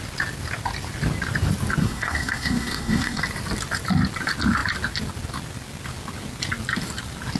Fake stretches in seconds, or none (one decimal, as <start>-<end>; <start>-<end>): 1.8-3.2